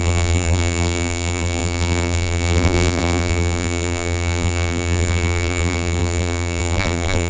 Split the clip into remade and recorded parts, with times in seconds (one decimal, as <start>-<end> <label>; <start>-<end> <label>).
0.0-7.3 remade